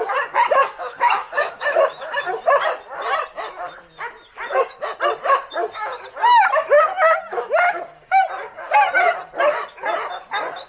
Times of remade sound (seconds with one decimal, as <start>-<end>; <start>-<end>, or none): 0.6-2.2; 7.3-7.8